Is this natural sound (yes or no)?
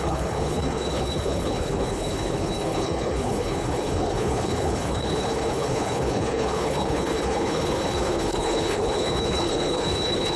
no